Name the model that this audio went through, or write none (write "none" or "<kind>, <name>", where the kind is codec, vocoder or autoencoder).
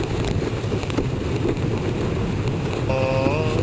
none